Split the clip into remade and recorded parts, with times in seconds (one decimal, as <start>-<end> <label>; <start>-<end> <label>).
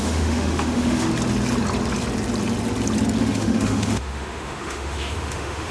0.0-1.1 remade; 1.1-3.2 recorded; 3.2-5.7 remade